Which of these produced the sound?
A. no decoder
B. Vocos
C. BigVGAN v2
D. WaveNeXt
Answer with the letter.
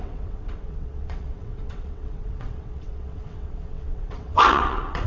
D